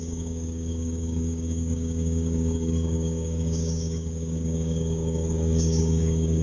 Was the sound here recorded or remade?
remade